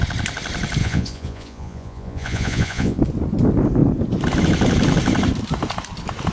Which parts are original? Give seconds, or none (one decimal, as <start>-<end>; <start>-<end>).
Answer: 0.0-0.8; 3.0-6.3